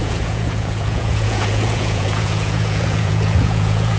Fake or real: fake